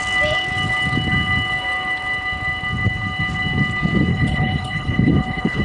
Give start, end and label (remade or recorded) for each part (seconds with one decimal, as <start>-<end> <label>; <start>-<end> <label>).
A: 0.0-4.1 recorded; 4.1-5.6 remade